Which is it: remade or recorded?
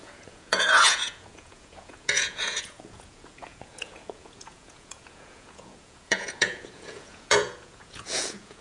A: remade